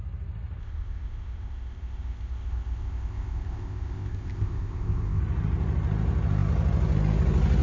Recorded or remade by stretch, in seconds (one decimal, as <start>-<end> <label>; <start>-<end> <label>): 0.0-0.6 recorded; 0.6-5.2 remade; 5.2-7.6 recorded